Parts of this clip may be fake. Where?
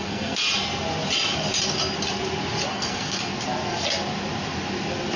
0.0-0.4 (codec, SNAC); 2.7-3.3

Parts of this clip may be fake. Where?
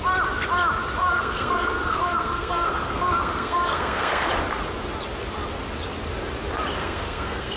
1.0-4.3 (codec, SNAC); 6.8-7.6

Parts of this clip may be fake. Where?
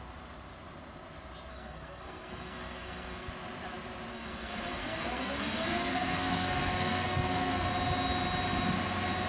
1.5-3.3 (codec, SNAC); 4.1-7.7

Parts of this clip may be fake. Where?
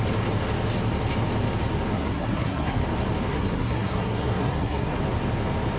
1.9-2.8 (codec, SNAC); 3.3-5.0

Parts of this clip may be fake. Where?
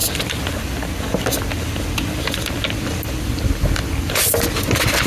none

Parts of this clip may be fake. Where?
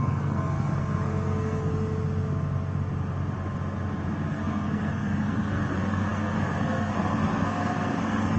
0.0-1.7 (codec, SNAC); 4.3-8.4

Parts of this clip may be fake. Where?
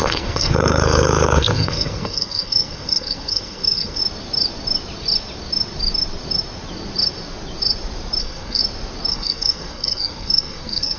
0.0-4.0 (codec, SNAC); 8.2-8.6; 9.1-11.0